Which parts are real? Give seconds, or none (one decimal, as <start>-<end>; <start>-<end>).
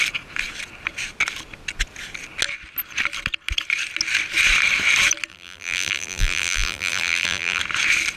0.0-5.3; 7.6-8.2